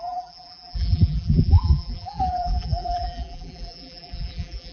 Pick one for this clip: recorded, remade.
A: remade